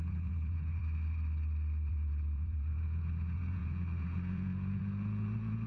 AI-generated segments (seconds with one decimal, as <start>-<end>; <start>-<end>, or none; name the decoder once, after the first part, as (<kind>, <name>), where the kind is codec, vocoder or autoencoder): 0.0-0.8 (vocoder, Vocos); 1.9-5.7